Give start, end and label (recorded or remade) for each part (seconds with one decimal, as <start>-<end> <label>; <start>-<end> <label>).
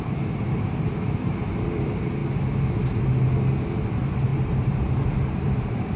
0.0-2.2 remade; 2.2-3.8 recorded; 3.8-6.0 remade